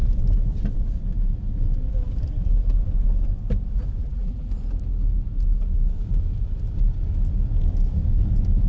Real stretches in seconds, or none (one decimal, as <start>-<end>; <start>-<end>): 0.0-4.0; 4.5-8.7